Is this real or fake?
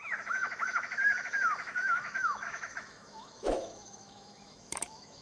fake